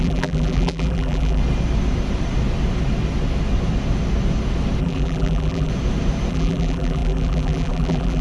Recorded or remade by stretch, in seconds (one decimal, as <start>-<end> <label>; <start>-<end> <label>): 0.0-1.4 remade; 1.4-4.8 recorded; 4.8-5.7 remade; 5.7-6.3 recorded; 6.3-8.2 remade